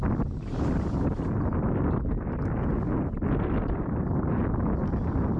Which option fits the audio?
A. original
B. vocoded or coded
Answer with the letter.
A